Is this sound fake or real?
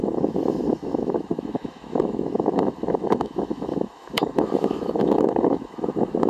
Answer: fake